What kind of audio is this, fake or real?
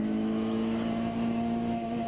fake